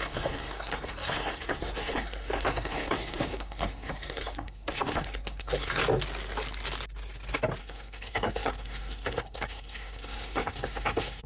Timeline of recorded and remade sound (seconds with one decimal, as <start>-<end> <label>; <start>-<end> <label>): 0.0-5.8 remade; 5.8-7.6 recorded; 7.6-11.3 remade